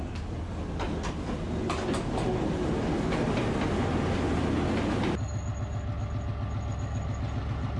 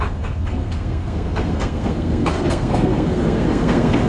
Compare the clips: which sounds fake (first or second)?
second